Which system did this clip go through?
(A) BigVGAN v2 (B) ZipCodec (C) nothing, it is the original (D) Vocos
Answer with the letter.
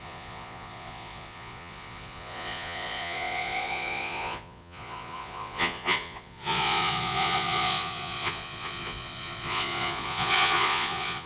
D